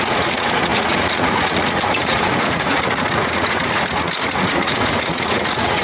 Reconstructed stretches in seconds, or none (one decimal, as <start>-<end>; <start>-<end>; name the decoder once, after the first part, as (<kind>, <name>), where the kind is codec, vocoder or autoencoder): 0.0-5.8 (vocoder, Vocos)